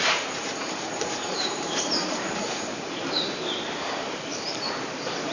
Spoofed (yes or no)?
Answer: yes